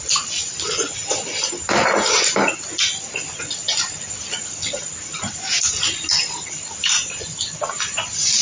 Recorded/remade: recorded